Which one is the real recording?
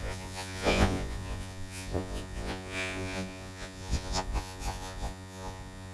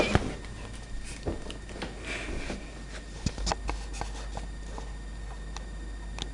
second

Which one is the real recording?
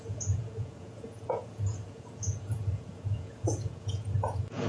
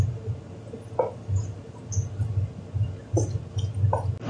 second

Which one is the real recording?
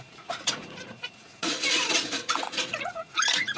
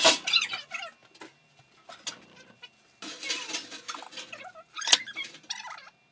second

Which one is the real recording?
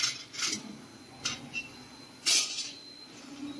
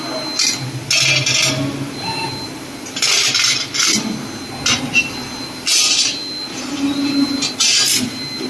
second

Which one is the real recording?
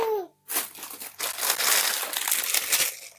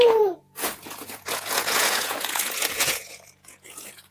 first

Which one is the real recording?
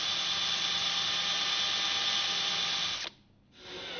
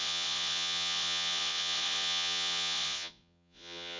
first